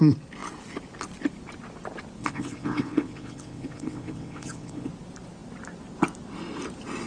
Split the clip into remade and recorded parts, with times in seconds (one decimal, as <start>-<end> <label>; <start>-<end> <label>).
0.0-2.2 recorded; 2.2-4.9 remade; 4.9-7.1 recorded